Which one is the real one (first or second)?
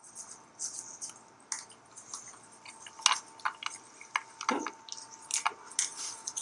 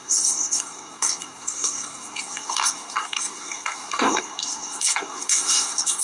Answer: first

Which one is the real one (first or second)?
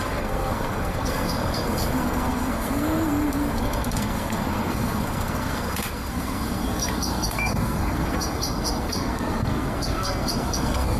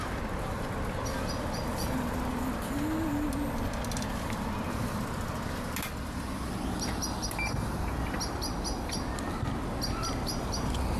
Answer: second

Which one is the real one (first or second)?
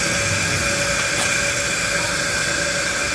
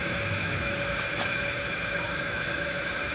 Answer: first